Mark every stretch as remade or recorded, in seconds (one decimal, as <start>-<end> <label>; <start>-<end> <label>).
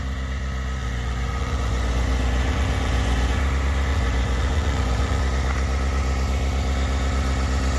0.0-0.8 recorded; 0.8-3.4 remade; 3.4-3.9 recorded; 3.9-5.2 remade; 5.2-7.8 recorded